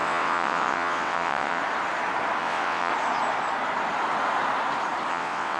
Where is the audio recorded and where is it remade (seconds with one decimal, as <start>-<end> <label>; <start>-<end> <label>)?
0.0-1.6 remade; 1.6-2.4 recorded; 2.4-2.9 remade; 2.9-5.1 recorded; 5.1-5.6 remade